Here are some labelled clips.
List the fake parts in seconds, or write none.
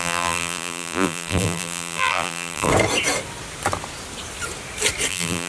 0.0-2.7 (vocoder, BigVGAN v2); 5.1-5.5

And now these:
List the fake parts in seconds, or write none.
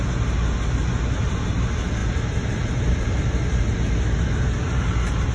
2.0-5.3 (vocoder, BigVGAN v2)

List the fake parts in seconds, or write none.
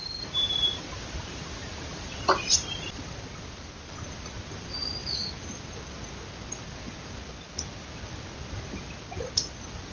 0.0-0.8 (vocoder, BigVGAN v2); 1.9-3.3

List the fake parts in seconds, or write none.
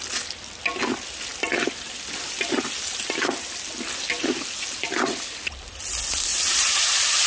6.3-7.3 (vocoder, BigVGAN v2)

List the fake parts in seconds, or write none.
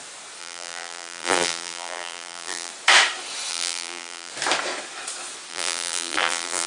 0.4-2.7 (vocoder, BigVGAN v2); 3.5-4.3; 5.5-6.7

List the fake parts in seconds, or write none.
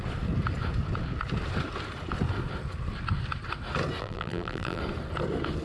4.0-4.8 (vocoder, BigVGAN v2)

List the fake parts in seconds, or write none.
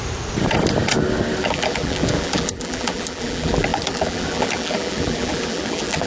1.4-6.1 (vocoder, BigVGAN v2)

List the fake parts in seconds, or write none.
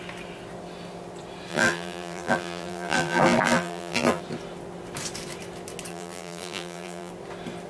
1.5-4.2 (vocoder, BigVGAN v2); 5.9-7.1